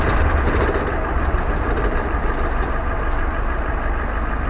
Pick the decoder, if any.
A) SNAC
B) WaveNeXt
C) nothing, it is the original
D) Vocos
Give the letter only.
C